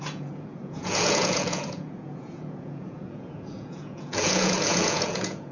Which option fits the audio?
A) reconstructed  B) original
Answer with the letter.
A